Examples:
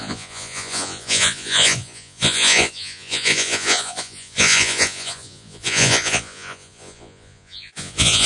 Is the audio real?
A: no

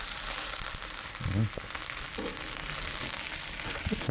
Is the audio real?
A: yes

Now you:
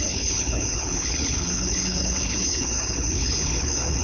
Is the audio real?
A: no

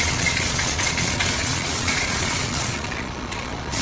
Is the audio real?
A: no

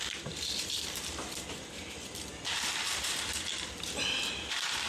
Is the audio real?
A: no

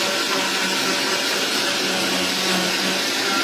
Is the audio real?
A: yes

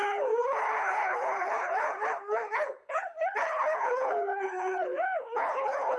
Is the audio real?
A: no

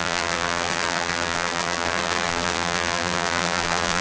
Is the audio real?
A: no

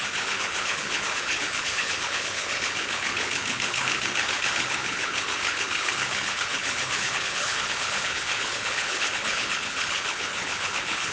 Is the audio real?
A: no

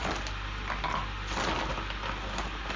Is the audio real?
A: yes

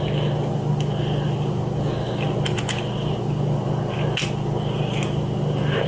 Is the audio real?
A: yes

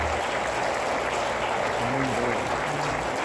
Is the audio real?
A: yes